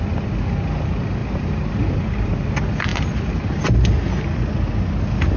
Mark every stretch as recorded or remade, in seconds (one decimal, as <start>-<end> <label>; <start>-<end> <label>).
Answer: 0.0-1.2 recorded; 1.2-2.5 remade; 2.5-5.4 recorded